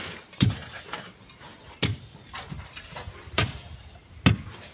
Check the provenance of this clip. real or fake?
real